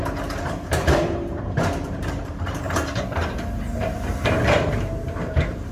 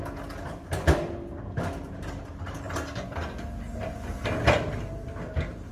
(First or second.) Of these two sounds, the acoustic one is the second